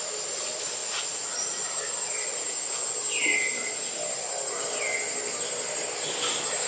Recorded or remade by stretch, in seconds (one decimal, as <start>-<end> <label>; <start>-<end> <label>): 0.0-6.7 recorded

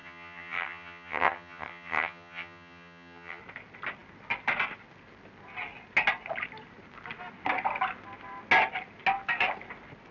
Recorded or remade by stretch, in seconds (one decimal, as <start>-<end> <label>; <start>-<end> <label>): 0.0-3.4 remade; 3.4-10.1 recorded

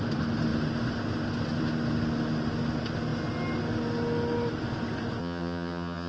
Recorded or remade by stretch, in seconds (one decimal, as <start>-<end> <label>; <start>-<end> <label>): 0.0-5.2 recorded; 5.2-6.1 remade

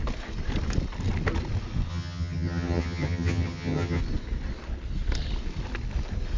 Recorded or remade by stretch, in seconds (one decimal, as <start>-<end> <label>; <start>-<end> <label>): 0.0-1.9 recorded; 1.9-4.0 remade; 4.0-6.4 recorded

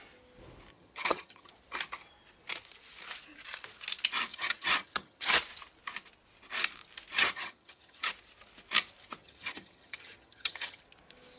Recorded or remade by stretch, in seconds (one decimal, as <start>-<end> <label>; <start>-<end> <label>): 0.0-0.7 recorded; 0.7-1.5 remade; 1.5-4.3 recorded; 4.3-5.3 remade; 5.3-7.2 recorded; 7.2-8.1 remade; 8.1-9.2 recorded; 9.2-10.8 remade; 10.8-11.4 recorded

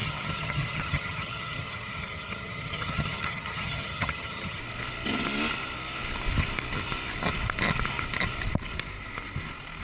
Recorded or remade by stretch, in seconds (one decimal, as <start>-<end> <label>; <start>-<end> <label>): 0.0-4.6 remade; 4.6-9.8 recorded